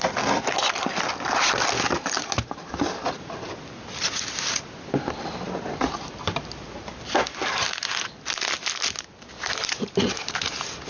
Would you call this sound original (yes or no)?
yes